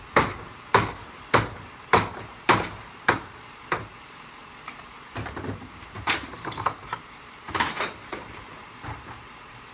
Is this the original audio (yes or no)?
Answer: no